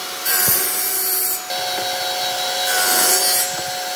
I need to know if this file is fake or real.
real